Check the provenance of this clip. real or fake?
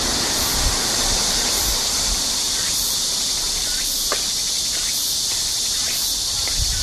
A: fake